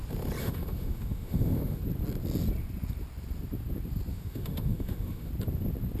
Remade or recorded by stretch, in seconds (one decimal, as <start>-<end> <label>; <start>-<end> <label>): 0.0-0.4 recorded; 0.4-1.8 remade; 1.8-4.1 recorded; 4.1-5.3 remade; 5.3-6.0 recorded

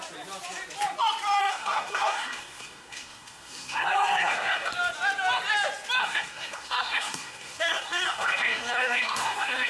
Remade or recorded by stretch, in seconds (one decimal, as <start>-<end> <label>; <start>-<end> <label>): 0.0-1.4 recorded; 1.4-4.7 remade; 4.7-6.0 recorded; 6.0-9.7 remade

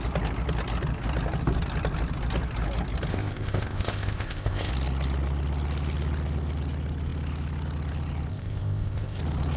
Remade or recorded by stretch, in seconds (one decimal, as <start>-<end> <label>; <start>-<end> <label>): 0.0-3.1 recorded; 3.1-4.7 remade; 4.7-8.3 recorded; 8.3-9.2 remade; 9.2-9.6 recorded

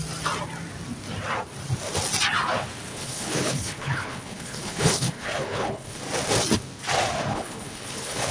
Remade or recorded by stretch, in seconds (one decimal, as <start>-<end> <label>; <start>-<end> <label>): 0.0-2.9 recorded; 2.9-6.0 remade; 6.0-7.3 recorded; 7.3-8.3 remade

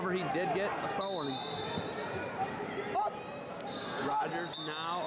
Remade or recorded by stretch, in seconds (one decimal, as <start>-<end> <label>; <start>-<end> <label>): 0.0-2.0 recorded; 2.0-3.0 remade; 3.0-5.1 recorded

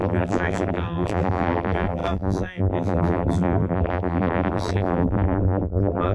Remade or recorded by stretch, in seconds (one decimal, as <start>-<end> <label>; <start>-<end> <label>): 0.0-6.1 remade

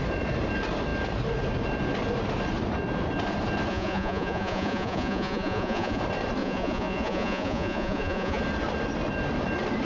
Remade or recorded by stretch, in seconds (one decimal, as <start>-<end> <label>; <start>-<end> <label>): 0.0-3.7 recorded; 3.7-6.0 remade; 6.0-6.4 recorded; 6.4-8.4 remade; 8.4-9.8 recorded

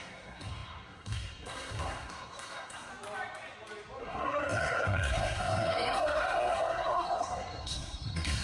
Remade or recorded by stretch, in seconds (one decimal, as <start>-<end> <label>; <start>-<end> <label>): 0.0-2.9 remade; 2.9-4.0 recorded; 4.0-8.4 remade